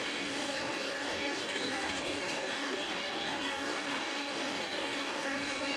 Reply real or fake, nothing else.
fake